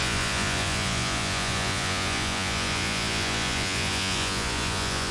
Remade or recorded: remade